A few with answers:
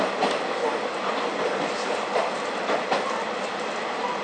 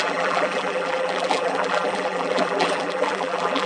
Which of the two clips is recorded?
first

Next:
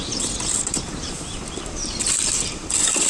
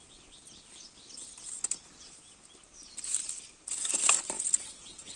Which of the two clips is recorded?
second